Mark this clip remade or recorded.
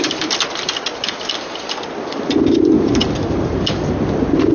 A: recorded